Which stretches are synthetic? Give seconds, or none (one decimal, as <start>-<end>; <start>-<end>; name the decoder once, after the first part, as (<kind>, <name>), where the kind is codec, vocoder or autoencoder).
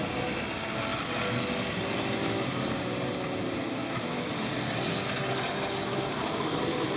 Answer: 3.8-4.3 (autoencoder, DAC-VAE)